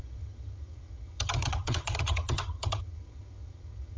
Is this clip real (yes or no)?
no